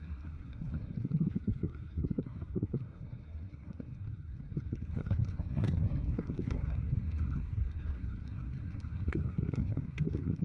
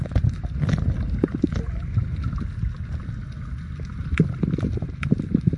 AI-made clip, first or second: first